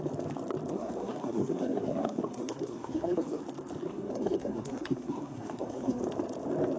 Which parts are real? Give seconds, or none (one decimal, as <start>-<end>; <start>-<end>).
0.0-0.7; 3.4-3.8; 6.0-6.8